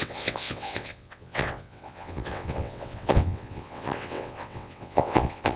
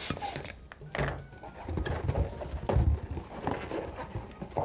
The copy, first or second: first